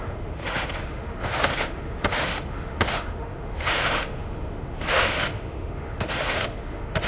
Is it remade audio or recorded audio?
remade